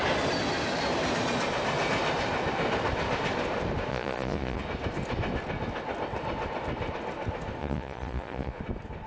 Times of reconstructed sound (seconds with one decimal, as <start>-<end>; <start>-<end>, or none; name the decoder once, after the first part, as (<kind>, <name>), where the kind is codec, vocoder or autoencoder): 3.9-4.6 (vocoder, Vocos); 7.6-8.6